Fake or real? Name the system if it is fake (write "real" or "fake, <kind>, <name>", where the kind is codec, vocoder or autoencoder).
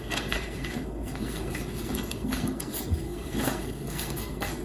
fake, codec, SNAC